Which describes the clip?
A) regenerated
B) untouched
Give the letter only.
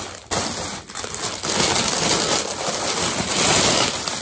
B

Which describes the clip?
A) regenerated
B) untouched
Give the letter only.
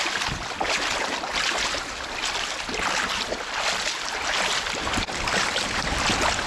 B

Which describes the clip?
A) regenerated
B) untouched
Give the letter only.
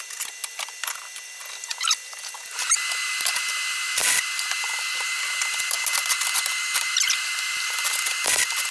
B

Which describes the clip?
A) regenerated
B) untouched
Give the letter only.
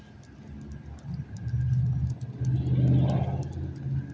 B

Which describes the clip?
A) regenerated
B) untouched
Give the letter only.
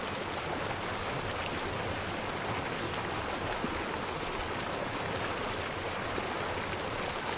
B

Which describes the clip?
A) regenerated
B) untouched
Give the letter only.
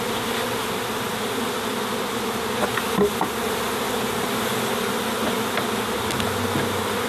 B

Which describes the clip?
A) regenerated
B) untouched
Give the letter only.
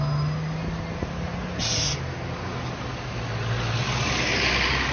B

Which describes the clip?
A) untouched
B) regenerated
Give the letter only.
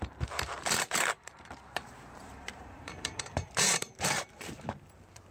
B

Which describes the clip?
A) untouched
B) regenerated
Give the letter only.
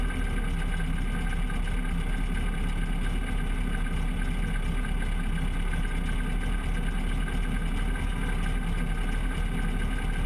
A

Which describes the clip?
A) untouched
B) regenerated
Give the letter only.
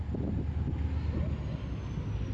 A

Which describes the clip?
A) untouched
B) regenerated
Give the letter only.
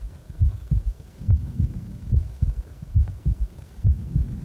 B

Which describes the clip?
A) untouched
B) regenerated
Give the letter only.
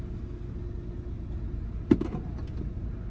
A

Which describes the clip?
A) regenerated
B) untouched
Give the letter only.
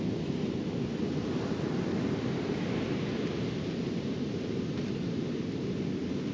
B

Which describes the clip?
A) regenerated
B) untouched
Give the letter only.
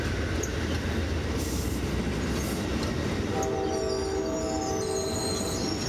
B